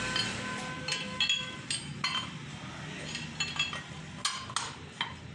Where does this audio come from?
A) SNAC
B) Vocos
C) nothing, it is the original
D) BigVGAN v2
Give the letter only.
C